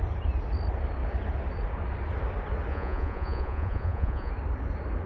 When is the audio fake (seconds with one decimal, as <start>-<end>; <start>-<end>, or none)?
2.7-4.3